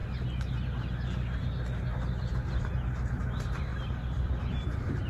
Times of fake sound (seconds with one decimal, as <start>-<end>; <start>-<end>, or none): 3.1-3.7; 4.5-5.1